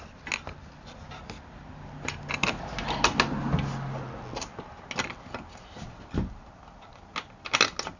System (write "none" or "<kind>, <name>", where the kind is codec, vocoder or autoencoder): none